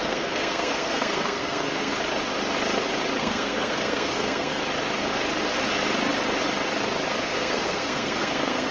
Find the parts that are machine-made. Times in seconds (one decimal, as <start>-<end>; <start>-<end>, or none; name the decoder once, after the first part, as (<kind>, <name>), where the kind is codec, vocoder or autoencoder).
0.0-1.9 (codec, SNAC); 3.2-4.6; 7.1-8.7